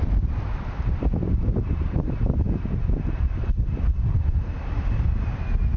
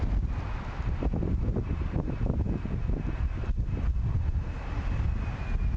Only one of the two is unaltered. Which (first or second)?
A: second